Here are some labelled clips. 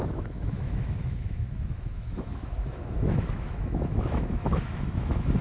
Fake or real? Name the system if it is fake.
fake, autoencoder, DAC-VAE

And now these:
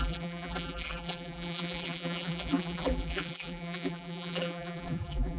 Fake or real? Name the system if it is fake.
fake, vocoder, BigVGAN v2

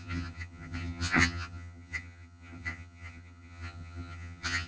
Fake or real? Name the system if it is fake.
fake, vocoder, HiFi-GAN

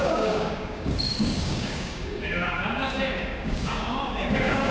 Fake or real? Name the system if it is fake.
fake, codec, DAC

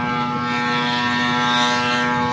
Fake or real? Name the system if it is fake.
real